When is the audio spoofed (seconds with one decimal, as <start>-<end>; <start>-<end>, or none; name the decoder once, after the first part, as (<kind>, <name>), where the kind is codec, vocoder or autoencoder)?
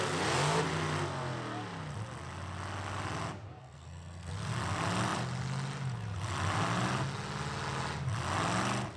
3.5-4.3 (codec, SNAC)